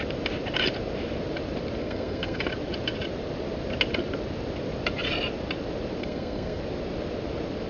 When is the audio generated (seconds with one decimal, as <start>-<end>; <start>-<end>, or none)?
1.8-2.4; 6.0-6.6